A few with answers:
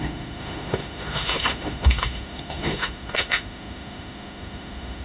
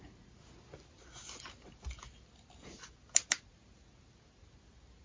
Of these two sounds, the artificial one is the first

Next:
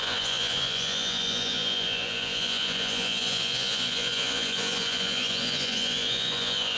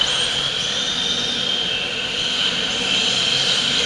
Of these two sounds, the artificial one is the first